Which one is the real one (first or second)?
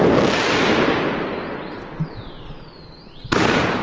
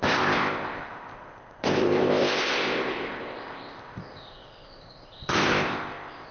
first